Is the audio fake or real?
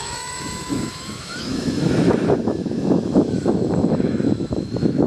fake